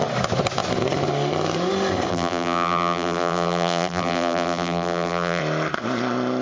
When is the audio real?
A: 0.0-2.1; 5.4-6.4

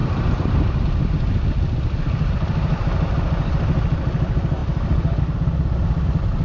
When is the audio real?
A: 0.8-6.4

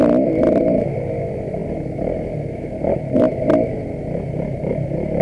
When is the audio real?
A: 0.0-5.2

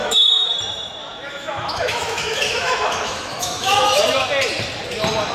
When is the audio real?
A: 0.5-1.0; 4.0-5.3

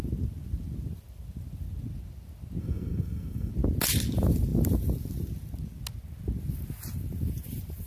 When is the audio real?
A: 0.0-2.6; 3.5-7.9